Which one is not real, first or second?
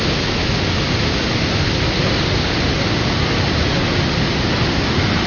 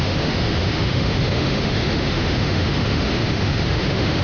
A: second